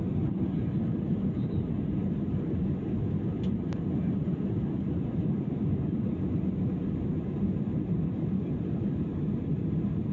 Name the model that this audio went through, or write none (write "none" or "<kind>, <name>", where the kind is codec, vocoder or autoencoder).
none